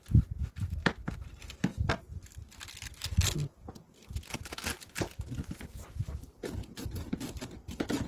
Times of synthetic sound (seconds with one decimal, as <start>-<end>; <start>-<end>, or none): none